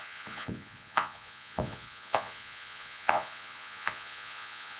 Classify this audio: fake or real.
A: fake